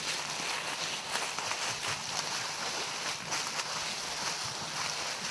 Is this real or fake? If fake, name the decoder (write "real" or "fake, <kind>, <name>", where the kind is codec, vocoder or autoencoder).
real